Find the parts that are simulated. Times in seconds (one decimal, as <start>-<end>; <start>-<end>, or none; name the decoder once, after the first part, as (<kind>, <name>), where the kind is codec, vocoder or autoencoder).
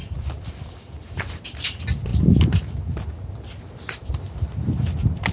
0.0-0.5 (vocoder, BigVGAN v2); 2.1-4.1